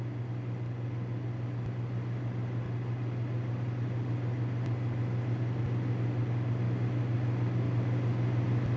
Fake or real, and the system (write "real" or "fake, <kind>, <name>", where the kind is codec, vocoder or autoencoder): real